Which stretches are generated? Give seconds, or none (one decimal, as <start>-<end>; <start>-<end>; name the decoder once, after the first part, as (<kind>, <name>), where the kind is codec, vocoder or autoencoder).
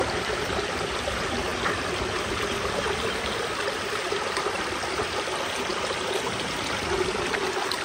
0.0-1.5 (vocoder, BigVGAN v2); 3.6-7.8